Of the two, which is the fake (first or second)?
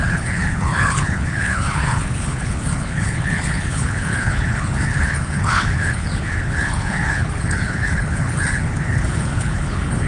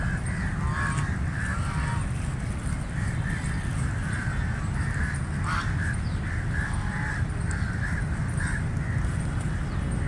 first